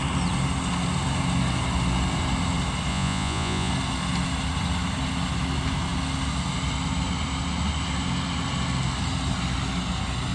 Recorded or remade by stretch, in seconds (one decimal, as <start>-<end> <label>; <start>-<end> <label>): 0.0-2.9 recorded; 2.9-3.7 remade; 3.7-10.3 recorded

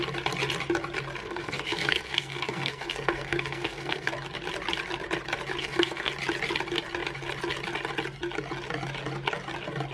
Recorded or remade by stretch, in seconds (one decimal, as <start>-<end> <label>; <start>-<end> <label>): 0.0-1.2 recorded; 1.2-4.1 remade; 4.1-5.6 recorded; 5.6-6.1 remade; 6.1-9.9 recorded

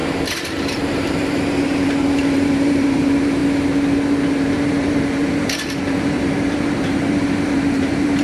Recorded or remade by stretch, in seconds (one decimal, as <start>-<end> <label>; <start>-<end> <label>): 0.0-3.4 remade; 3.4-4.3 recorded; 4.3-8.2 remade

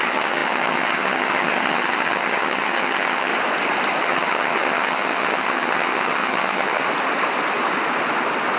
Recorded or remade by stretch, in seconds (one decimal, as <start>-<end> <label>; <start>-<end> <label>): 0.0-3.3 remade; 3.3-4.0 recorded; 4.0-6.8 remade; 6.8-8.6 recorded